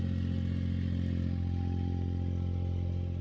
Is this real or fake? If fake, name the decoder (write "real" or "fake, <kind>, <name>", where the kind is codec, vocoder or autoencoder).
real